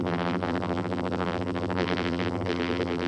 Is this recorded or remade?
remade